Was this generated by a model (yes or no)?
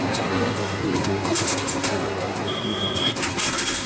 yes